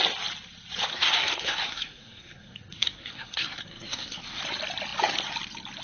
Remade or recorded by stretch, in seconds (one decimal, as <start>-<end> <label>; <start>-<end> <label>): 0.0-0.9 recorded; 0.9-4.4 remade; 4.4-5.8 recorded